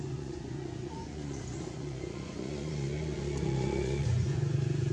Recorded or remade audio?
remade